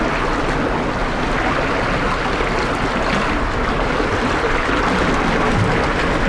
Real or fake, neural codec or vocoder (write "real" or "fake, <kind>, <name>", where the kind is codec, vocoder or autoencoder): real